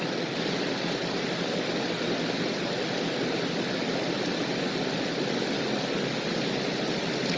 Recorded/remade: recorded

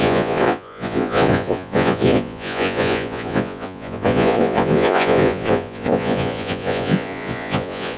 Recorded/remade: remade